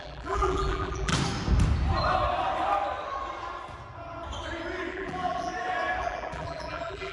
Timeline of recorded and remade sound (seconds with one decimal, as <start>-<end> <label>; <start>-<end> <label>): 0.0-1.1 remade; 1.1-4.9 recorded; 4.9-5.5 remade; 5.5-6.0 recorded; 6.0-7.1 remade